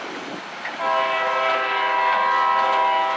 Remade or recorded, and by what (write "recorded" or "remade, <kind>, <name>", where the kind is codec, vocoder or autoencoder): recorded